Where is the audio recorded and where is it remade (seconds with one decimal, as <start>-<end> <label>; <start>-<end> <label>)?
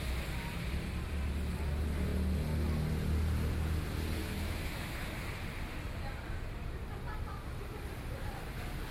0.0-4.2 recorded; 4.2-5.1 remade; 5.1-8.9 recorded